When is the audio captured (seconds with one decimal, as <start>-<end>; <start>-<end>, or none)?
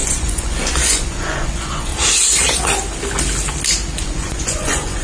1.9-4.0